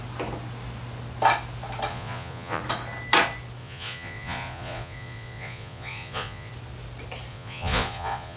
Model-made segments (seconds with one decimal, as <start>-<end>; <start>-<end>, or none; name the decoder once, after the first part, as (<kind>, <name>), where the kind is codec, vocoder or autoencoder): 1.9-2.6 (vocoder, Vocos); 3.6-6.5; 7.3-8.4